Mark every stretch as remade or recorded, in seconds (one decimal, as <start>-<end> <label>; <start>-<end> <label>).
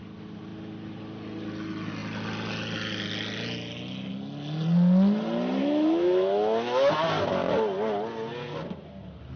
0.0-5.6 recorded; 5.6-6.9 remade; 6.9-9.4 recorded